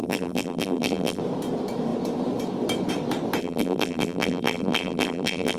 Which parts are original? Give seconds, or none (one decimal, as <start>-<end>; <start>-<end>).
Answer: 1.2-3.4